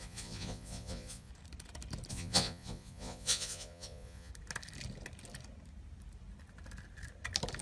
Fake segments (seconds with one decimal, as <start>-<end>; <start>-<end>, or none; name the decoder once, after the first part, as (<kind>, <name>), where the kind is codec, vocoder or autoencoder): 0.0-1.3 (vocoder, Vocos); 2.1-4.3